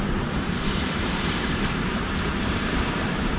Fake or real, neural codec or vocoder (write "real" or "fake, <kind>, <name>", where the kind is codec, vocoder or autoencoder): fake, vocoder, BigVGAN v2